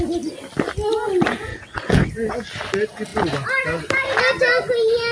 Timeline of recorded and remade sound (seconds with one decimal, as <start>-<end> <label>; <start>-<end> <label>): 0.0-1.5 recorded; 1.5-2.1 remade; 2.1-5.1 recorded